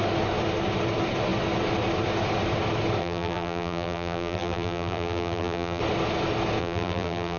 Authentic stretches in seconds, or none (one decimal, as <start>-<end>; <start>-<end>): 0.0-3.0; 5.8-6.6